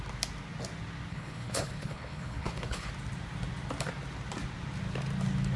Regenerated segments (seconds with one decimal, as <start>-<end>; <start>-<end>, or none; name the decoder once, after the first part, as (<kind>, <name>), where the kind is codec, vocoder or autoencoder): 1.1-2.9 (codec, HILCodec)